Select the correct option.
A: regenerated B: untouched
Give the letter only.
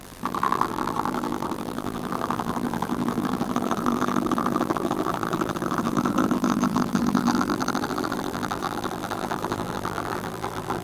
A